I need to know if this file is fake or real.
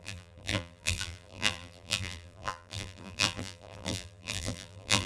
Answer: fake